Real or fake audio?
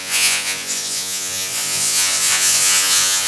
fake